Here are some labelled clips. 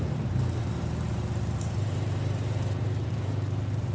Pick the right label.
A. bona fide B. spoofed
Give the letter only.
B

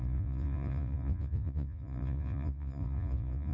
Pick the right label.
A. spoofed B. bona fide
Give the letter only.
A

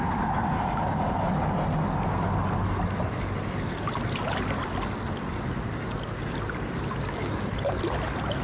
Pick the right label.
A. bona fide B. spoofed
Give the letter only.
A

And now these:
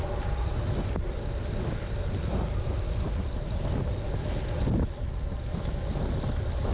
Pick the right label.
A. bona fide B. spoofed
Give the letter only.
A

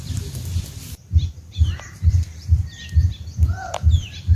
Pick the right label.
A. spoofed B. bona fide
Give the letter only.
A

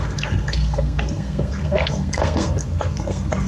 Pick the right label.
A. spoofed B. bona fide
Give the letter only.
A